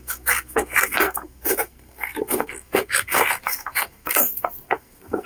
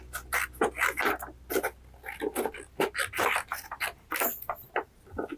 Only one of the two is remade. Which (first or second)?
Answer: first